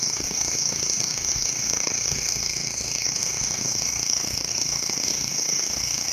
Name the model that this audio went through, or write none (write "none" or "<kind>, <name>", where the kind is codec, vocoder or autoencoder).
codec, DAC